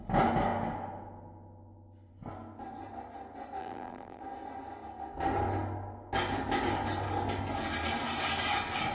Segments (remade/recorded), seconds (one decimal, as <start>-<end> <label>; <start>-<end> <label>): 0.0-3.6 recorded; 3.6-4.2 remade; 4.2-8.9 recorded